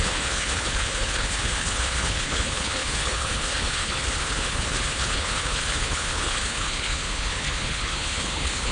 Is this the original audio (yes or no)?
no